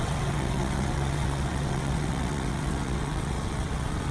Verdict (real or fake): fake